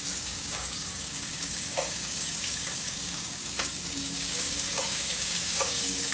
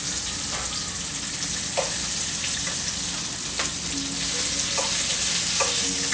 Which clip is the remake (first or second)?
first